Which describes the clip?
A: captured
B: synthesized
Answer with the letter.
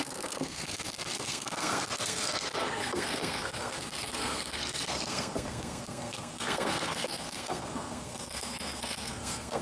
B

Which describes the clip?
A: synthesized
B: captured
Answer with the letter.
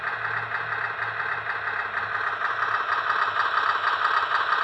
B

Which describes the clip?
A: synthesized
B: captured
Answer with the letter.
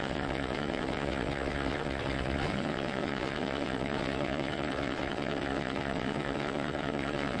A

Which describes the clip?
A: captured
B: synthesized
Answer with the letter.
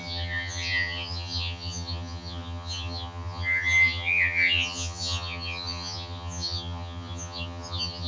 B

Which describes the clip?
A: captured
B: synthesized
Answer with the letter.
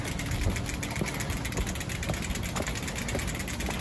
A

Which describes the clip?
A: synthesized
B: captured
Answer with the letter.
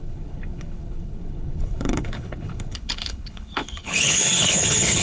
A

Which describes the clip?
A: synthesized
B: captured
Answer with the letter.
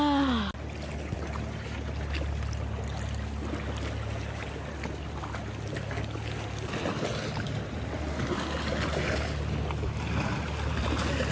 B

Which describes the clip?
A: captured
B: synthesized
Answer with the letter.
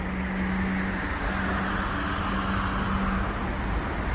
A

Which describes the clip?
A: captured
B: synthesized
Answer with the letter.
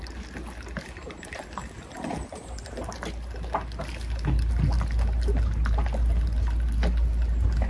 A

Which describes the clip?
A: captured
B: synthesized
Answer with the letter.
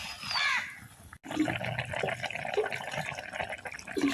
A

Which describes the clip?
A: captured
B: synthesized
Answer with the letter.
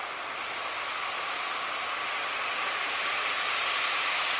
A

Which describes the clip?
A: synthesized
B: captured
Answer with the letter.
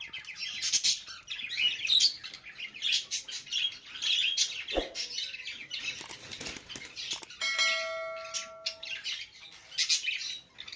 B